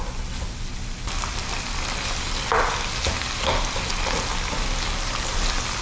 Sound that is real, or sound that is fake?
real